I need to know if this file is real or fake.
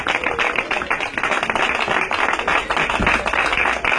real